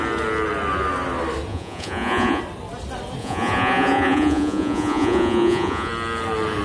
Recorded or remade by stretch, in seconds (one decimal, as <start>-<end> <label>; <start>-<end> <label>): 0.0-1.5 recorded; 1.5-2.4 remade; 2.4-3.2 recorded; 3.2-5.9 remade; 5.9-6.6 recorded